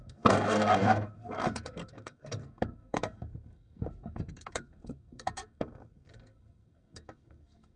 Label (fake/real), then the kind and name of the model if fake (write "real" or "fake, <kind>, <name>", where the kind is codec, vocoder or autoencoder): fake, codec, SNAC